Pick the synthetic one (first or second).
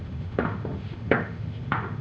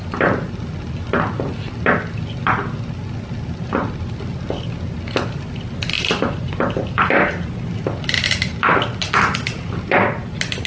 first